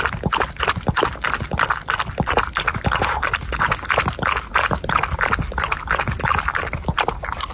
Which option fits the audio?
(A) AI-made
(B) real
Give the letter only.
B